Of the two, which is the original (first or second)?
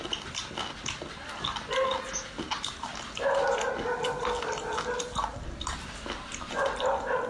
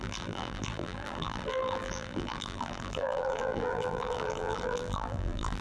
first